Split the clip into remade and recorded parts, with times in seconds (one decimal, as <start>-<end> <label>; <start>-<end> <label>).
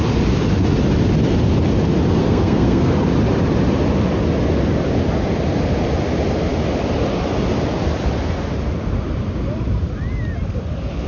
0.0-2.2 recorded; 2.2-2.9 remade; 2.9-11.1 recorded